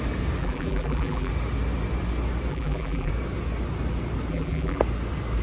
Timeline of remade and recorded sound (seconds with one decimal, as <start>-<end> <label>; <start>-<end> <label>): 0.0-0.4 recorded; 0.4-1.3 remade; 1.3-2.5 recorded; 2.5-3.1 remade; 3.1-4.3 recorded; 4.3-4.8 remade; 4.8-5.4 recorded